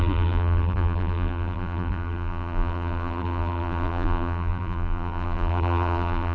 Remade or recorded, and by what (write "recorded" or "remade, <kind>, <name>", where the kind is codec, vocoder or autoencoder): remade, vocoder, BigVGAN v2